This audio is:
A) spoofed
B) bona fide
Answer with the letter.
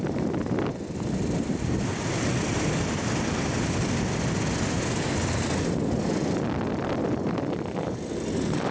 B